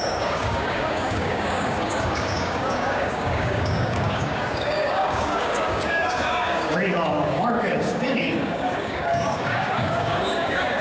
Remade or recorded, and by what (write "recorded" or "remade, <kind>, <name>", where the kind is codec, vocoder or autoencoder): remade, codec, DAC